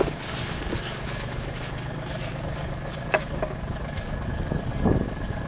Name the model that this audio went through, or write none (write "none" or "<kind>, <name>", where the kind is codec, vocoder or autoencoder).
codec, DAC